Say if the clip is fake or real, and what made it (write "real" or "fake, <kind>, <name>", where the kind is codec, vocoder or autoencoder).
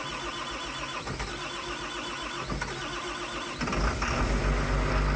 real